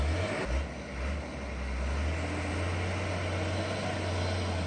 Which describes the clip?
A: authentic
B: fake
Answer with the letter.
A